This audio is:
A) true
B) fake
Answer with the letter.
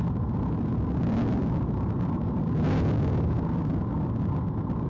A